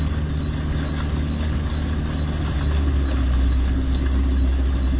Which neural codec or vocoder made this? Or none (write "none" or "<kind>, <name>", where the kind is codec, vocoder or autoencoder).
none